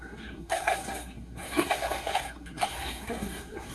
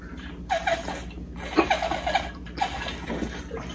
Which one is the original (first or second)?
second